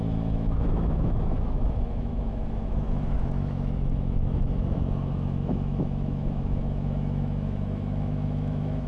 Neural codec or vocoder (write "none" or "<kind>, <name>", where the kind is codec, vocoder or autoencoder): autoencoder, DAC-VAE